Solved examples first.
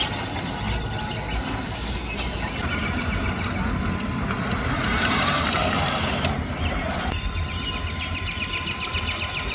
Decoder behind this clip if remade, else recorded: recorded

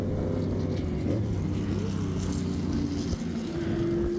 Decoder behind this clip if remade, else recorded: recorded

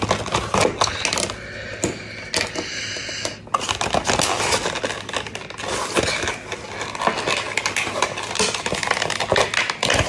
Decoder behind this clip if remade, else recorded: recorded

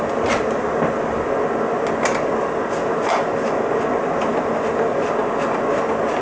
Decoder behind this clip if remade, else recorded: recorded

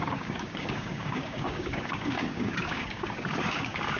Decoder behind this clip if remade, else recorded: remade, codec, DAC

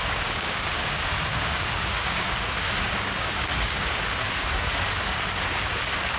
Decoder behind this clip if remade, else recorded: remade, codec, DAC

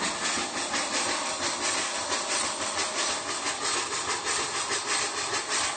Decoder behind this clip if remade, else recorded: recorded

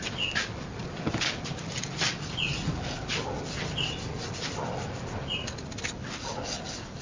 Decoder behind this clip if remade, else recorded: recorded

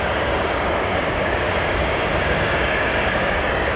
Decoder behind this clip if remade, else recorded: remade, codec, DAC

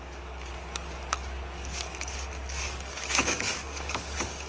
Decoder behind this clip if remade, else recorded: remade, codec, DAC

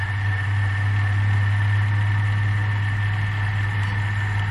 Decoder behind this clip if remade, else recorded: recorded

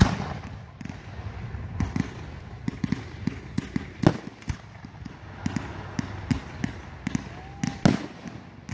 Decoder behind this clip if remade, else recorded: recorded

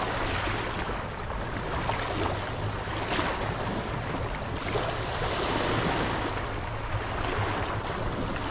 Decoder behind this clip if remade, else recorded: recorded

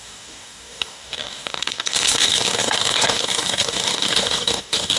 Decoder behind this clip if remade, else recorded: remade, codec, DAC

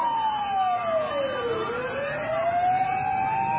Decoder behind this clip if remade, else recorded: recorded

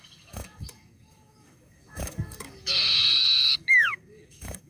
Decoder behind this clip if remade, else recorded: remade, codec, DAC